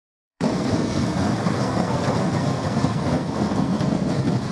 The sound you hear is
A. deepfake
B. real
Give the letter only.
A